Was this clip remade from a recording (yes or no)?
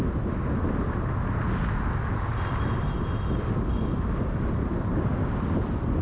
no